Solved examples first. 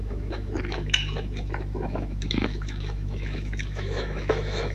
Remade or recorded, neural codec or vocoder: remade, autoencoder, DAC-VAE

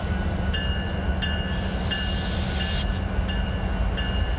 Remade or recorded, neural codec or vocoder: recorded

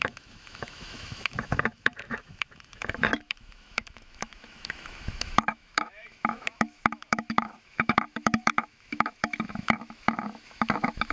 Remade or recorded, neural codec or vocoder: remade, autoencoder, DAC-VAE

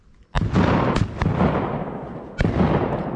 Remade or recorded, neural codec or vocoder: recorded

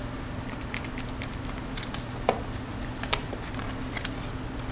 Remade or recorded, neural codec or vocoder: recorded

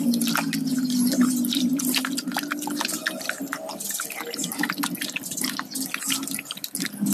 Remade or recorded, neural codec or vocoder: recorded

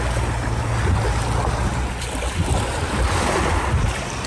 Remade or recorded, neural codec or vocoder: recorded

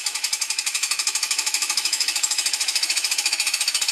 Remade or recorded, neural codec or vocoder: remade, autoencoder, DAC-VAE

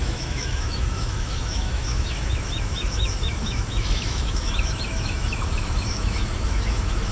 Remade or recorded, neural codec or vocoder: remade, autoencoder, DAC-VAE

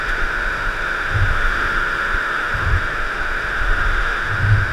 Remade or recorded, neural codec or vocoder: remade, autoencoder, DAC-VAE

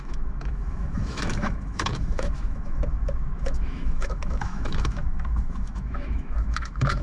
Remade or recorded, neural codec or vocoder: remade, autoencoder, DAC-VAE